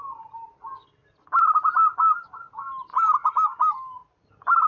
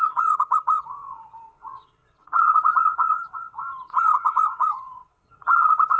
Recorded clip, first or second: first